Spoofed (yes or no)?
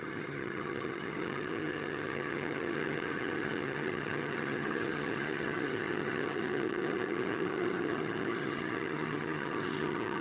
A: yes